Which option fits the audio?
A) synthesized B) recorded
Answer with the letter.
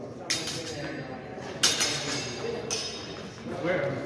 B